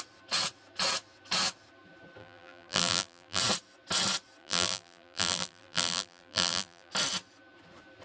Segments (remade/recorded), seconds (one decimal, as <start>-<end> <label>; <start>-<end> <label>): 0.0-2.2 recorded; 2.2-3.4 remade; 3.4-4.4 recorded; 4.4-6.9 remade; 6.9-8.0 recorded